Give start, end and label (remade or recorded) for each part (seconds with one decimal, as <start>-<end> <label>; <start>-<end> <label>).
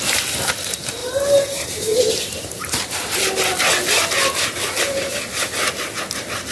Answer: 0.0-1.0 recorded; 1.0-3.2 remade; 3.2-6.5 recorded